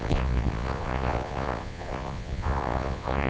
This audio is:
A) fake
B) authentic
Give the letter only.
A